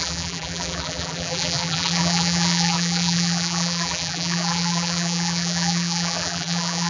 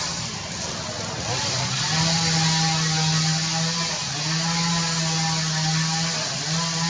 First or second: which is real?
second